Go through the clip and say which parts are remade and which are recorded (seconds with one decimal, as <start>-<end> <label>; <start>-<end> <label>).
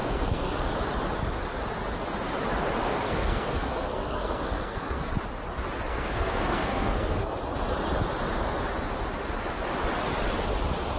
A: 0.0-0.7 remade; 0.7-2.8 recorded; 2.8-5.1 remade; 5.1-5.9 recorded; 5.9-7.3 remade; 7.3-11.0 recorded